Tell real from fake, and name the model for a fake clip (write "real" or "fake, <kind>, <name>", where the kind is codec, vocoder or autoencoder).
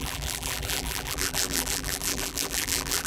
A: fake, vocoder, BigVGAN v2